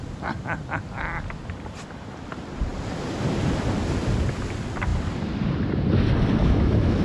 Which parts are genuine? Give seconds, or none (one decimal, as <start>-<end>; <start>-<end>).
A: 0.0-6.4